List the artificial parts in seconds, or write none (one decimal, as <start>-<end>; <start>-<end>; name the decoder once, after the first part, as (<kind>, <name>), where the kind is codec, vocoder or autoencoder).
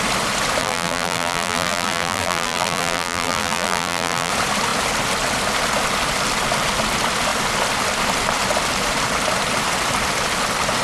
0.6-4.3 (vocoder, BigVGAN v2)